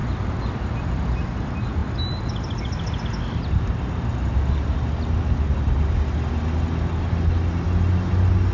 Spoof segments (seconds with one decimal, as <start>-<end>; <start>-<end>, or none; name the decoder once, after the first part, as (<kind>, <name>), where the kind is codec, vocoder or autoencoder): none